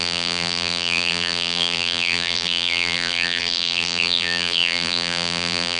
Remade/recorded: remade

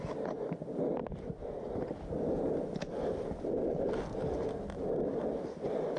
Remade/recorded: recorded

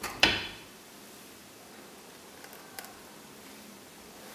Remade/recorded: remade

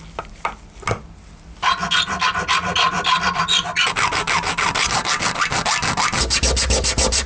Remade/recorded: recorded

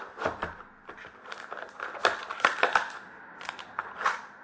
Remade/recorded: recorded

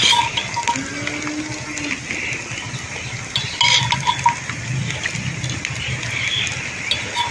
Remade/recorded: recorded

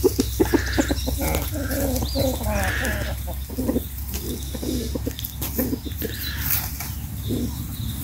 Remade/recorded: recorded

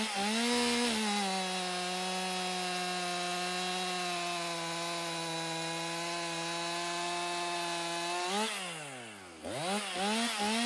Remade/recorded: recorded